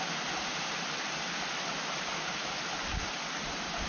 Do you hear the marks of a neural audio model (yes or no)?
no